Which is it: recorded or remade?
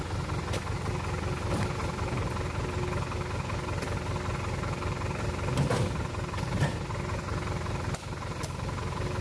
recorded